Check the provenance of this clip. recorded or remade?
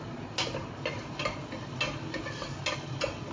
recorded